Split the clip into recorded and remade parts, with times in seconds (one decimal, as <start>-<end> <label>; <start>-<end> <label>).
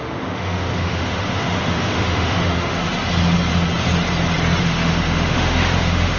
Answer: 0.0-2.8 remade; 2.8-4.6 recorded; 4.6-6.2 remade